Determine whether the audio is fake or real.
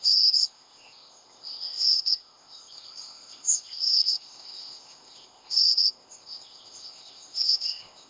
fake